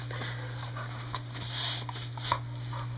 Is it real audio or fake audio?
real